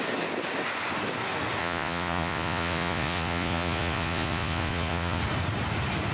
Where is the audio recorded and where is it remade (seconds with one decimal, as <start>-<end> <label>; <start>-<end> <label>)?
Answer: 0.0-1.6 recorded; 1.6-5.2 remade; 5.2-6.1 recorded